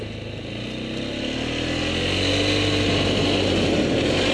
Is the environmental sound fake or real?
real